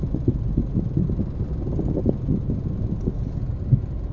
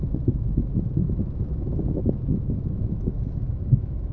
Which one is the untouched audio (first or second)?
first